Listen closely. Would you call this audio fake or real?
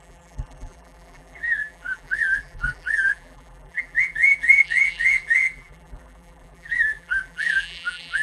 fake